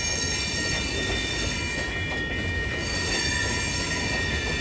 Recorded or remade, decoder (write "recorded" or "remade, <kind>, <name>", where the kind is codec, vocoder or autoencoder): recorded